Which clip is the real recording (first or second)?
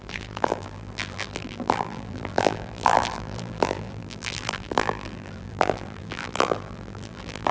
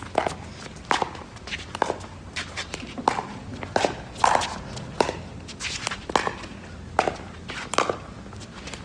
second